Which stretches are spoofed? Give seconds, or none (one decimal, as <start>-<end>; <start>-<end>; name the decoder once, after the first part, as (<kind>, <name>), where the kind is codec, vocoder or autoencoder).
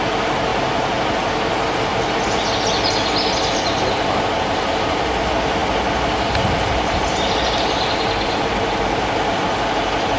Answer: none